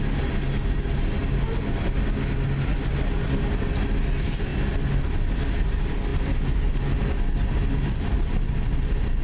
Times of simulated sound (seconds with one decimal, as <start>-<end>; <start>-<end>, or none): none